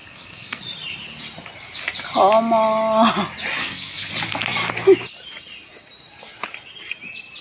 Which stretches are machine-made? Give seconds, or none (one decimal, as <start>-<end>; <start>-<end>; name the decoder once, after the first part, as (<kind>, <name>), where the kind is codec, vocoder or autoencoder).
0.0-0.6 (codec, SNAC); 3.6-4.1